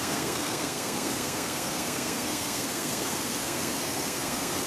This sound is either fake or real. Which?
fake